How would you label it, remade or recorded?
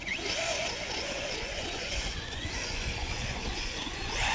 remade